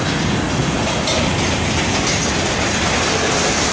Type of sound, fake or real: real